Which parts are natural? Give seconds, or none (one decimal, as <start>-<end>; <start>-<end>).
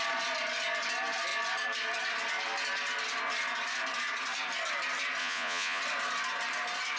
0.0-5.2; 5.8-7.0